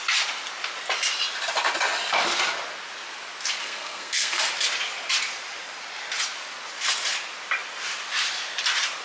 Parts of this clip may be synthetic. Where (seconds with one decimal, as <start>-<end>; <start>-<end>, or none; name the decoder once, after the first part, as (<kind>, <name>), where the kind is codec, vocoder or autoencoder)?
3.6-4.4 (codec, SNAC)

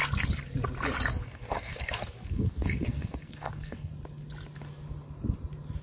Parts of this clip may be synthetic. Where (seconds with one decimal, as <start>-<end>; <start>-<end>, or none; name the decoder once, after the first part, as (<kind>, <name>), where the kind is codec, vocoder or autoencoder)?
1.1-3.9 (codec, SNAC)

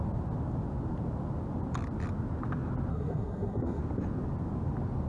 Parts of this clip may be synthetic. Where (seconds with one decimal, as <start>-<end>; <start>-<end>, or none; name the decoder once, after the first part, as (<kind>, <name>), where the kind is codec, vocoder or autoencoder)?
2.9-3.8 (codec, SNAC)

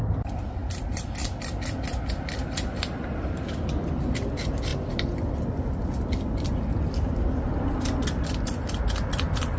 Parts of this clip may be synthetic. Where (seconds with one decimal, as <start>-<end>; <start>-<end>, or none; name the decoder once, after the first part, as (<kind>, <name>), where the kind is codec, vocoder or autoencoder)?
none

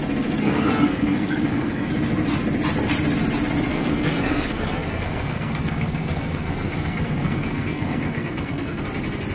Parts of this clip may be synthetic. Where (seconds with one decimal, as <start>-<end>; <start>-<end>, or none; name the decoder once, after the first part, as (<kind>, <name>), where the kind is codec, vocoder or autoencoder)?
0.4-1.9 (codec, SNAC); 3.7-8.8